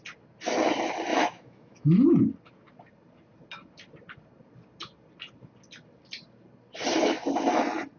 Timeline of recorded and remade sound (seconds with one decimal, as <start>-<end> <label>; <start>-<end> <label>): 0.0-1.1 recorded; 1.1-1.9 remade; 1.9-8.0 recorded